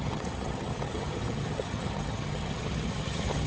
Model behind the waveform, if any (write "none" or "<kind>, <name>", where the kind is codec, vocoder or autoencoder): vocoder, HiFi-GAN